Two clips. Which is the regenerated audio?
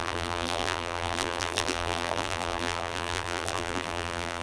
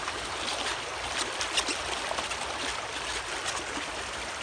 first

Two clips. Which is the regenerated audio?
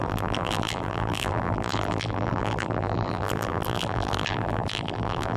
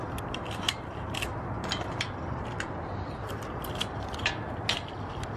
first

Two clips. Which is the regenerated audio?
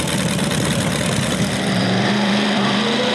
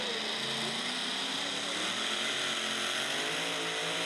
first